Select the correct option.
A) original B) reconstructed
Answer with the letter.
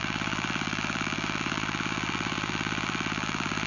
B